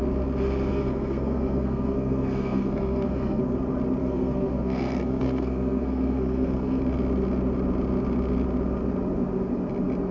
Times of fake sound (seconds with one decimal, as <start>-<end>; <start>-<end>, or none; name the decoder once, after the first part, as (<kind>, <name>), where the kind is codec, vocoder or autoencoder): 0.7-3.4 (codec, SNAC); 4.0-6.8